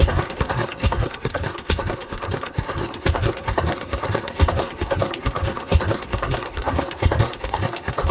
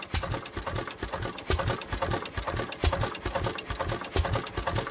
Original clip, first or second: second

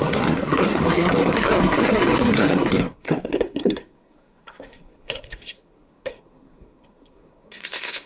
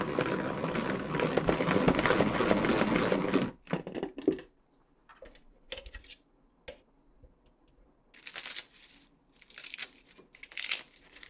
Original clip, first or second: second